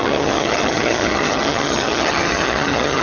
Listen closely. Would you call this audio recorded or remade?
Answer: remade